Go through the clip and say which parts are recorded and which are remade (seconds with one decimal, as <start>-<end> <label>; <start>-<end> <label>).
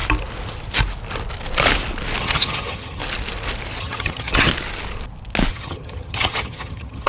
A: 0.0-2.2 recorded; 2.2-3.0 remade; 3.0-3.8 recorded; 3.8-4.5 remade; 4.5-5.5 recorded; 5.5-7.1 remade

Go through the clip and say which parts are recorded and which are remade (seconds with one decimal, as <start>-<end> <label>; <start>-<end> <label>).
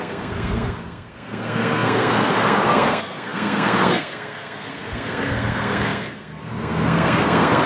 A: 0.0-7.7 remade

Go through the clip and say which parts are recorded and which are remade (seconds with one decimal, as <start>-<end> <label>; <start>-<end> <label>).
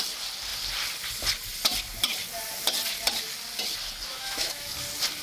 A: 0.0-4.1 recorded; 4.1-4.7 remade; 4.7-5.2 recorded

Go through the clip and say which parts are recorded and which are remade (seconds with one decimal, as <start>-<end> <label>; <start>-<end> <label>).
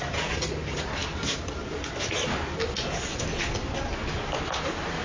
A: 0.0-5.0 recorded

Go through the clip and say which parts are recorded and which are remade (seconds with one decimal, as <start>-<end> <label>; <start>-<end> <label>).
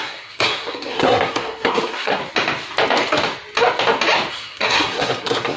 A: 0.0-2.2 remade; 2.2-4.3 recorded; 4.3-5.6 remade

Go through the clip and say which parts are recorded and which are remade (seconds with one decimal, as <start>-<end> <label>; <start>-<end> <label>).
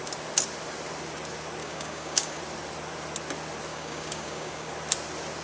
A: 0.0-1.6 recorded; 1.6-2.4 remade; 2.4-3.7 recorded; 3.7-4.7 remade; 4.7-5.4 recorded